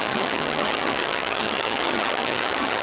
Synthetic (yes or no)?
yes